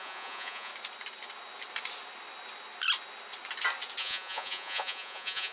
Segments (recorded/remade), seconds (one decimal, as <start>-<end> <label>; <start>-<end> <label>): 0.0-0.7 remade; 0.7-4.0 recorded; 4.0-5.5 remade